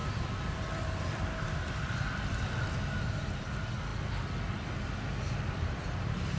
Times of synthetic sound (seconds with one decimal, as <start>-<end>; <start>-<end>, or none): 0.0-2.4